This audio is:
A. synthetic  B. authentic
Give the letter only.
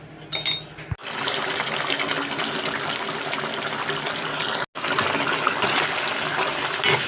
B